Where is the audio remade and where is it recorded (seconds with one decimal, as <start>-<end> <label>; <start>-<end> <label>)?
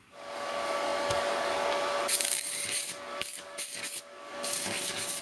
0.0-5.2 remade